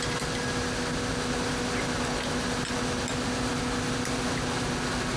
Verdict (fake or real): real